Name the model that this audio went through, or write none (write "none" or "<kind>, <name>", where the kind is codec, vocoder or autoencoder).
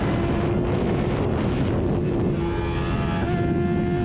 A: none